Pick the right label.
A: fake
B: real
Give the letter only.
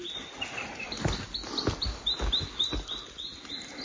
B